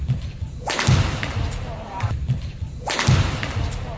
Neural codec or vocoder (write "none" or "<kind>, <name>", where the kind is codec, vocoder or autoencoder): none